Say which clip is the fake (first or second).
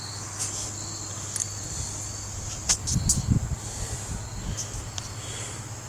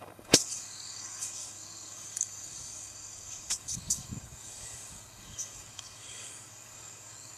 second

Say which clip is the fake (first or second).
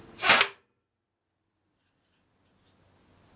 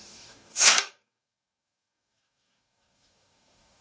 second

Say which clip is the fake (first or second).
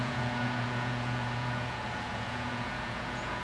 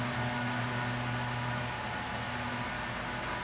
first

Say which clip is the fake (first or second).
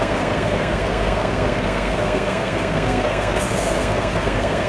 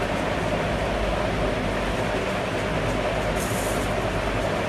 first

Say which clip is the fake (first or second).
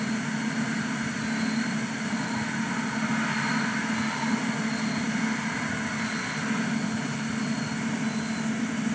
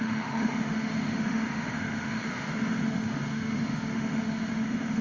second